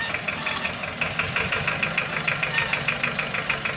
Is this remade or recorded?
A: recorded